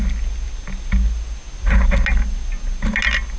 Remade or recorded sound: recorded